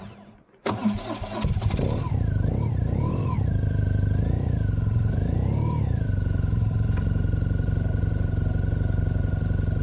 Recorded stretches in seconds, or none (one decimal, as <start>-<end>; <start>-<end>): 0.8-1.5